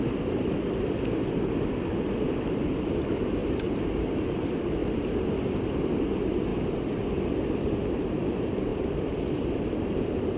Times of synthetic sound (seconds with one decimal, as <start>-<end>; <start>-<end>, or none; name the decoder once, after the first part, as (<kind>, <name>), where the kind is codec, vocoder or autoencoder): 0.0-3.4 (vocoder, BigVGAN v2); 4.3-4.8; 5.6-6.5; 8.2-10.4